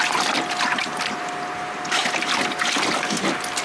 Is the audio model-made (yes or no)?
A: no